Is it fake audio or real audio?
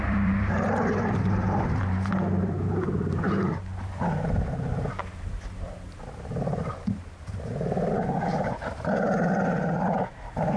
fake